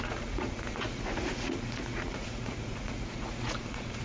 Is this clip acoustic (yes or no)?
no